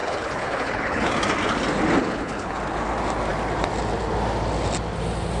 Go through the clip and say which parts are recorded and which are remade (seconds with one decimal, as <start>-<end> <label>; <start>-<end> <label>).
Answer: 0.0-1.1 remade; 1.1-2.0 recorded; 2.0-2.6 remade; 2.6-5.4 recorded

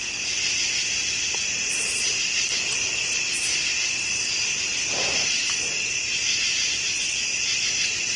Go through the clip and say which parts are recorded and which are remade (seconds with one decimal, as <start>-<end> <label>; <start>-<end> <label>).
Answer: 0.0-8.2 recorded

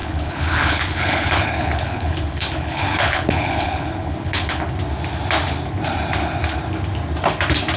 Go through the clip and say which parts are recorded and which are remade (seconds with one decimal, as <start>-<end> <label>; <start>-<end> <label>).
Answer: 0.0-4.7 remade; 4.7-7.8 recorded

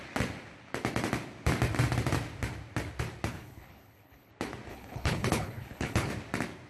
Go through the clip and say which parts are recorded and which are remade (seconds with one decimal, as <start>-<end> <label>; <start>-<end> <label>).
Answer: 0.0-3.3 recorded; 3.3-4.3 remade; 4.3-4.7 recorded; 4.7-6.1 remade; 6.1-6.7 recorded

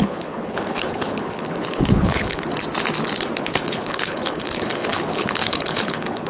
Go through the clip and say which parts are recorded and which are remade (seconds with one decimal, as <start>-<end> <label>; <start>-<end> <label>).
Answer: 0.0-2.5 remade; 2.5-3.4 recorded; 3.4-6.3 remade

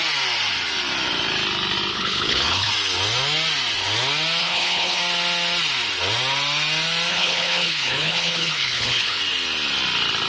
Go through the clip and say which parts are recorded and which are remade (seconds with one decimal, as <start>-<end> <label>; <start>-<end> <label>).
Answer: 0.0-1.9 recorded; 1.9-2.7 remade; 2.7-4.4 recorded; 4.4-5.0 remade; 5.0-7.1 recorded; 7.1-9.2 remade; 9.2-10.3 recorded